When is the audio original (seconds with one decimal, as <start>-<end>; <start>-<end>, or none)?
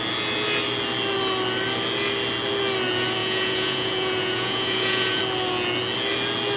0.0-3.2; 5.2-6.6